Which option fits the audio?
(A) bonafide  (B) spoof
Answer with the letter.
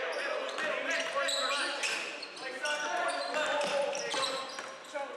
A